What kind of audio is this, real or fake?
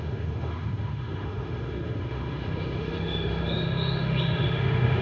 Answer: fake